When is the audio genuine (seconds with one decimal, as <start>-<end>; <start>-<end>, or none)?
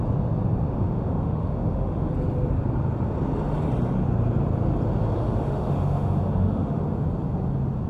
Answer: 0.0-0.7; 2.1-5.2; 6.8-7.9